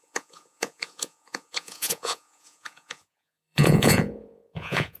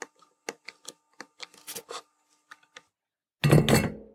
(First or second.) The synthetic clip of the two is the first